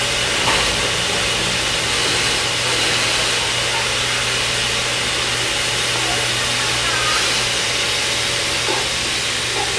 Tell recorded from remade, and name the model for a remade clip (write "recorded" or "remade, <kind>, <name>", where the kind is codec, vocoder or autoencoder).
recorded